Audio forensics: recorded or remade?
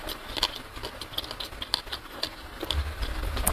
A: recorded